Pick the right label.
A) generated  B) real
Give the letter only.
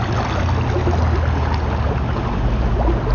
B